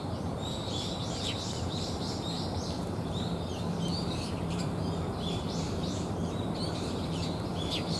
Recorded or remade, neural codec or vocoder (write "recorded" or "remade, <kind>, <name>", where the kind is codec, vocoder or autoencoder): remade, vocoder, BigVGAN v2